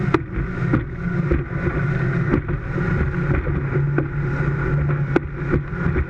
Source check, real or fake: real